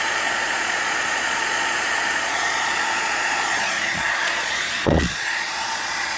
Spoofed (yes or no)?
yes